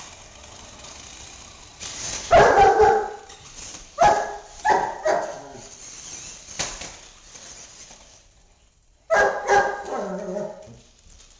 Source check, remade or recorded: recorded